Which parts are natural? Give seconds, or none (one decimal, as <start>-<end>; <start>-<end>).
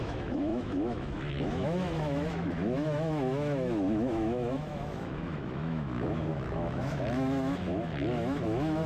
none